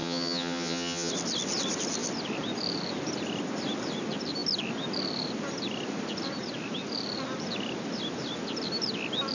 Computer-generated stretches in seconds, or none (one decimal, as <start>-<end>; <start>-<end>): 0.0-1.1